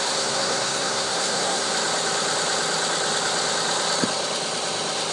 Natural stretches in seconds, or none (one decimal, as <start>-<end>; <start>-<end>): 1.7-5.1